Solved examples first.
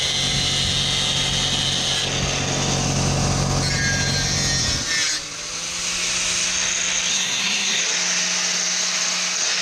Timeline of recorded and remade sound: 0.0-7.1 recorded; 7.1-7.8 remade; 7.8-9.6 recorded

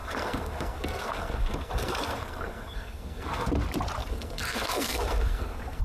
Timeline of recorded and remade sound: 0.0-3.5 remade; 3.5-4.0 recorded; 4.0-5.8 remade

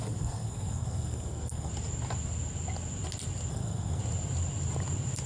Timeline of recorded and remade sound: 0.0-1.7 remade; 1.7-3.5 recorded; 3.5-4.0 remade; 4.0-5.3 recorded

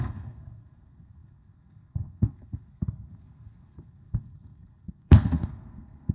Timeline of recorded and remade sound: 0.0-6.1 remade